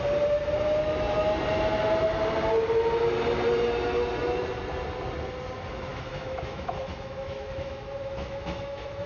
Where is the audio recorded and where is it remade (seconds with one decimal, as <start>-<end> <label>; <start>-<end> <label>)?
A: 0.0-5.9 recorded; 5.9-9.1 remade